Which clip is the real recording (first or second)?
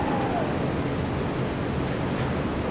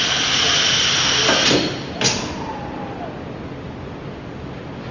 first